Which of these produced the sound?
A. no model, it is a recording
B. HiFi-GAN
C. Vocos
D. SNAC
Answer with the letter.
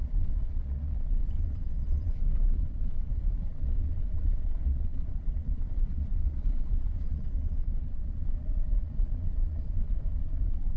C